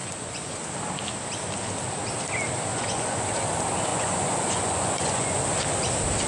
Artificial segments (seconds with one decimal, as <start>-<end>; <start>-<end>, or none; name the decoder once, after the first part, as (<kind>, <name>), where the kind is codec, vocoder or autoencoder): 0.0-0.6 (vocoder, Vocos); 2.7-3.2; 3.9-5.4